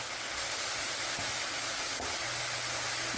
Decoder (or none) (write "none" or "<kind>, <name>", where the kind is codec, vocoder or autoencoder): none